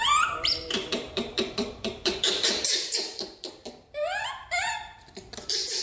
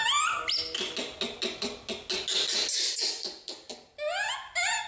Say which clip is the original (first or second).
second